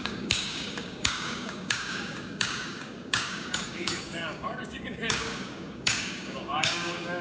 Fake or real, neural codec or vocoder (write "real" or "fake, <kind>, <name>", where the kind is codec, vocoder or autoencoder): fake, codec, DAC